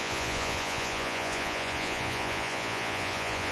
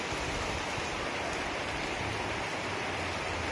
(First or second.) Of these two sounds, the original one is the second